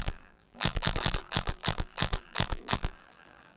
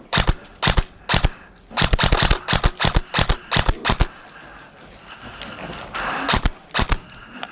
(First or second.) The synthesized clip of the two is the first